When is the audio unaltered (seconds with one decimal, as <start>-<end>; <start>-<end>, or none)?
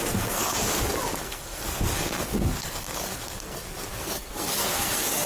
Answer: 0.6-1.2